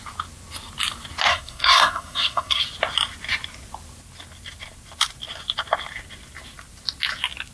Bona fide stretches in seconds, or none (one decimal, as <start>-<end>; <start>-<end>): 0.0-1.3; 2.6-7.5